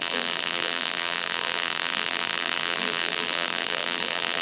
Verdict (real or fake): fake